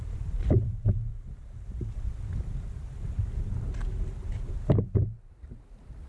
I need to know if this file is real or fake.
real